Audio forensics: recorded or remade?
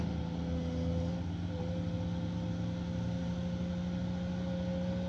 recorded